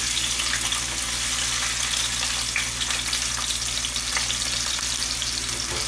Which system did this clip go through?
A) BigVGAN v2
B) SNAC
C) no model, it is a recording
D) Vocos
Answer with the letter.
C